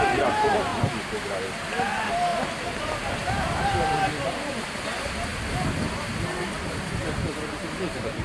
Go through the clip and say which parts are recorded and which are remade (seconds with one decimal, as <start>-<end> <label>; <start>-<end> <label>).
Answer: 0.0-0.7 recorded; 0.7-1.4 remade; 1.4-2.3 recorded; 2.3-3.1 remade; 3.1-8.2 recorded